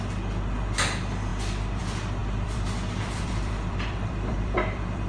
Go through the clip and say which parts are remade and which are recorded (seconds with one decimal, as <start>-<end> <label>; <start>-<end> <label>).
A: 0.0-2.2 recorded; 2.2-5.1 remade